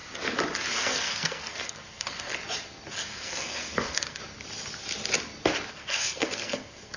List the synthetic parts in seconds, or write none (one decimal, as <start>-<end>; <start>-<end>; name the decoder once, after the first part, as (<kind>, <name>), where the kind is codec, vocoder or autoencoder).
0.7-2.3 (codec, SNAC); 2.9-4.2; 5.7-7.0